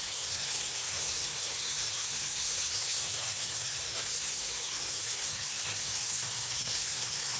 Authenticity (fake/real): fake